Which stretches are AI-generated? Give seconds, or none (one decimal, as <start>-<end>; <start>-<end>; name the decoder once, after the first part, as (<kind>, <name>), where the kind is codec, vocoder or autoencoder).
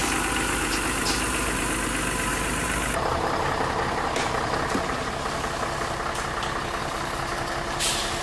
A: 0.0-1.6 (vocoder, BigVGAN v2); 2.3-4.3; 6.8-7.5